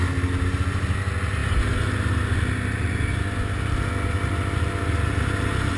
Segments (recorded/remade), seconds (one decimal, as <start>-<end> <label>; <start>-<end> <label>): 0.0-5.8 recorded